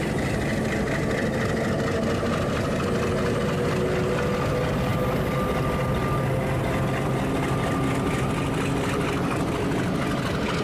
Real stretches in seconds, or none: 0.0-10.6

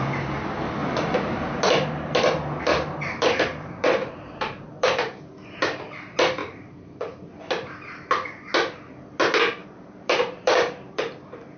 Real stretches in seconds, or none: 0.0-0.8; 1.7-2.7; 5.2-6.4; 7.2-9.6; 11.0-11.6

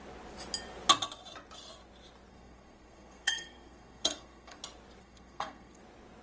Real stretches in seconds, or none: 0.0-2.3; 4.6-5.0; 5.8-6.2

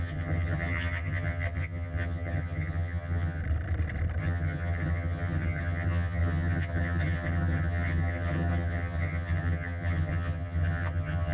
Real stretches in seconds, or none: 3.4-4.2

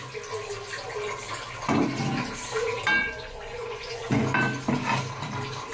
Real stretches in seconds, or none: 0.0-3.0; 4.2-5.7